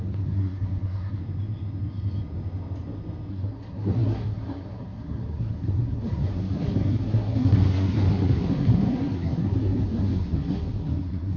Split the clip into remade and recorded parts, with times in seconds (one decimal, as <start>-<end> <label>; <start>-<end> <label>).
0.0-1.2 remade; 1.2-3.3 recorded; 3.3-11.4 remade

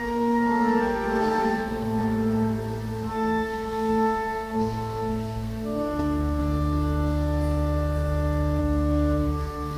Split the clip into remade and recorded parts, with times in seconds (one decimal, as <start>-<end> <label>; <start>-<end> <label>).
0.0-2.0 remade; 2.0-3.1 recorded; 3.1-6.4 remade; 6.4-8.6 recorded; 8.6-9.8 remade

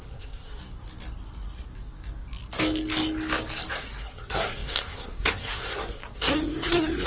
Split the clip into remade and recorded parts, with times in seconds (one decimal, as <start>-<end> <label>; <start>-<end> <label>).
0.0-0.6 remade; 0.6-3.7 recorded; 3.7-7.1 remade